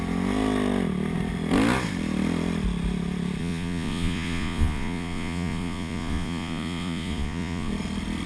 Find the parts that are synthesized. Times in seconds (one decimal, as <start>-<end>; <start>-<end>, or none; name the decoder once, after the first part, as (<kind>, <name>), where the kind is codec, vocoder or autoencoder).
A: 3.4-7.7 (vocoder, Vocos)